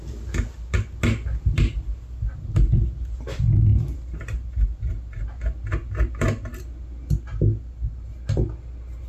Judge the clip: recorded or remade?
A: recorded